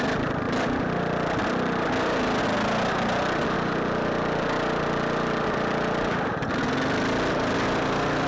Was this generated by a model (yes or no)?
no